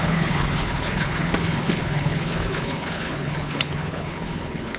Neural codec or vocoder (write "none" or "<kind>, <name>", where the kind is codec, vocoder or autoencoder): codec, HILCodec